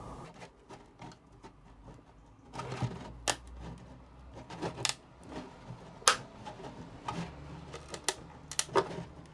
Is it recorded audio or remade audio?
recorded